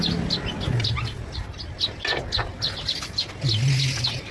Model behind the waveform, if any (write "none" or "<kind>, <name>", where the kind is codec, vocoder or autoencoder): none